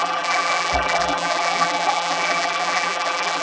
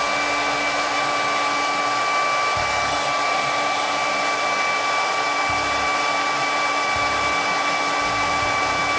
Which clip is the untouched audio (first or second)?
second